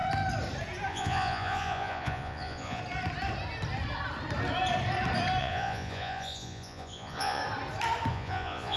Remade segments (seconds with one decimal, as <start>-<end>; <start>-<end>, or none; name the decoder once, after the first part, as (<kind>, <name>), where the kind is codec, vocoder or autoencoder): 0.9-2.8 (vocoder, Vocos); 5.4-7.4; 8.1-8.8